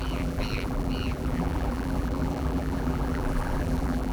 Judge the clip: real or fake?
fake